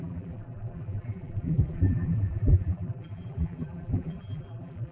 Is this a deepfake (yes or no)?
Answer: yes